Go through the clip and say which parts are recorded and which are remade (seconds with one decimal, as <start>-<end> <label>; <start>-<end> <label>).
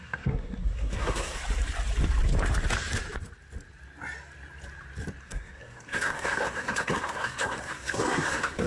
0.0-1.4 remade; 1.4-5.2 recorded; 5.2-8.7 remade